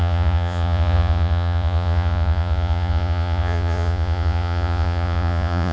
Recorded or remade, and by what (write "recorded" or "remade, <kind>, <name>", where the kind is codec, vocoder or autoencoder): remade, vocoder, Vocos